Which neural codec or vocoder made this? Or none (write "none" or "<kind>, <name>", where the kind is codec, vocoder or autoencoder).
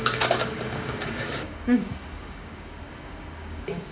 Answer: codec, DAC